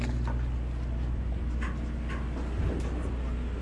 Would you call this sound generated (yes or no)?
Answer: no